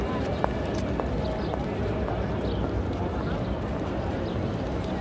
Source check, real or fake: real